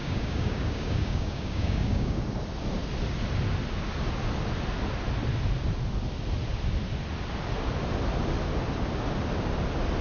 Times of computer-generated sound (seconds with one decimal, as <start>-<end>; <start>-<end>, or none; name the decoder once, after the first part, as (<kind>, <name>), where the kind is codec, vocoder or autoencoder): 0.0-2.2 (codec, DAC)